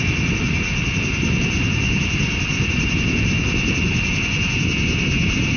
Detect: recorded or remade recorded